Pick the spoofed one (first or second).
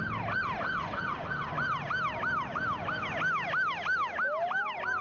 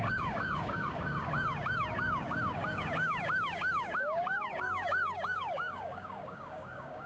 second